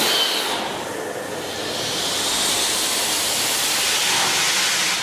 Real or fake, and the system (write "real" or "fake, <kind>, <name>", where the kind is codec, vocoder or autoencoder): real